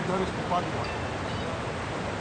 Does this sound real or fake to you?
real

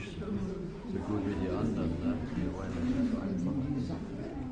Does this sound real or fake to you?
real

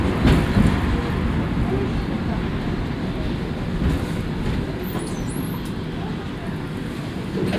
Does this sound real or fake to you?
real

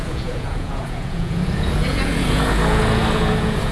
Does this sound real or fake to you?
fake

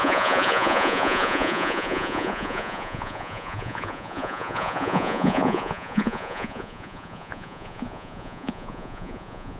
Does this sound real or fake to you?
fake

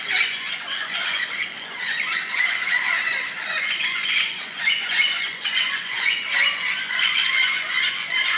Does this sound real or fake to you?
fake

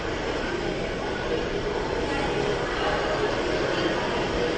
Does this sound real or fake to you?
real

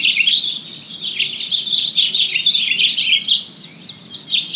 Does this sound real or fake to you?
real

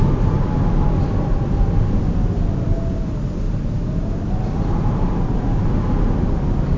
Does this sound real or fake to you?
real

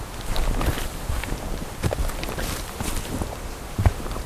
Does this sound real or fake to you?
real